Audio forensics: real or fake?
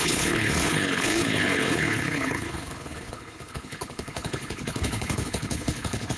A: fake